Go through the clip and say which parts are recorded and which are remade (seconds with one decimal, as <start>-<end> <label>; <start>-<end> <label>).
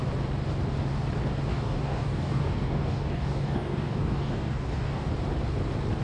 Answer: 0.0-1.5 recorded; 1.5-5.1 remade; 5.1-6.0 recorded